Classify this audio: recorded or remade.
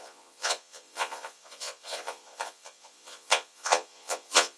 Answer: remade